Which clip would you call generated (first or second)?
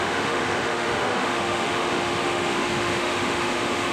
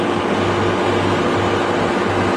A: first